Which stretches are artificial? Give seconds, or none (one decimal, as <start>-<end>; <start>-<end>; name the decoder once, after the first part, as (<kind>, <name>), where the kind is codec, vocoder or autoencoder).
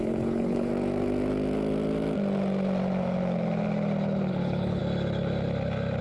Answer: 0.0-0.7 (codec, HILCodec); 4.3-4.8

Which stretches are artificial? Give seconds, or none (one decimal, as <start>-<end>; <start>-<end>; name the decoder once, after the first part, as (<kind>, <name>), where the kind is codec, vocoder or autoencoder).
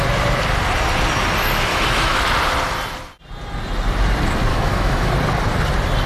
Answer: 1.7-2.2 (autoencoder, DAC-VAE); 4.5-5.1